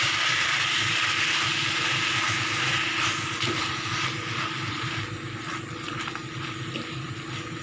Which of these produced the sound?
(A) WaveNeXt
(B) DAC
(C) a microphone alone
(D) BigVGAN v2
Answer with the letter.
C